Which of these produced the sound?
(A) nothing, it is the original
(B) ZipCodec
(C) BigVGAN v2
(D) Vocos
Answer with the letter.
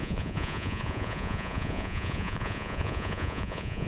D